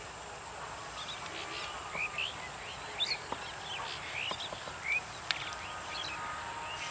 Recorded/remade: recorded